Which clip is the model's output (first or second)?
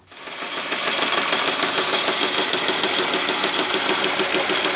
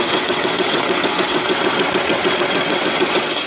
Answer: second